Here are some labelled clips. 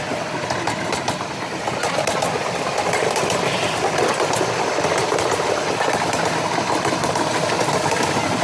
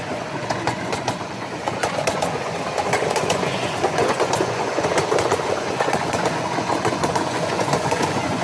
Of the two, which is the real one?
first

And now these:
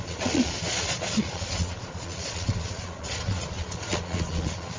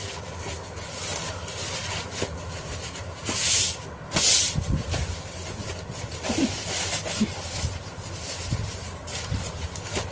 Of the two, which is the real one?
second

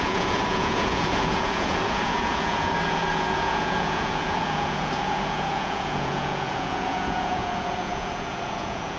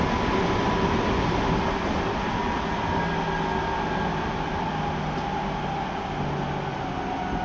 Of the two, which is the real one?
second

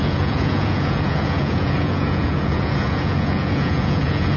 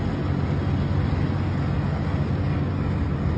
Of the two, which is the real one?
second